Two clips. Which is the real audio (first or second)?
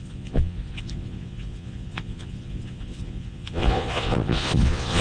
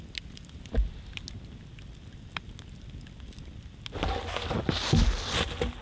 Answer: second